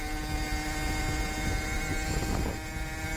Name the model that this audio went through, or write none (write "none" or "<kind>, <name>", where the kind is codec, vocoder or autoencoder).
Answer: none